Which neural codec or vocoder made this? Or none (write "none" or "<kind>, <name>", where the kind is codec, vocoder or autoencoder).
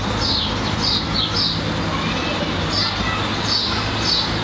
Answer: none